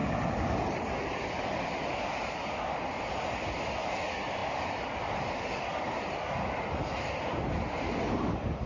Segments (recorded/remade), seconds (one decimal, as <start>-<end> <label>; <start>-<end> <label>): 0.0-8.7 recorded